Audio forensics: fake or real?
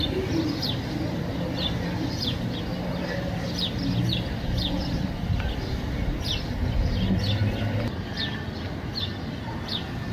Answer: real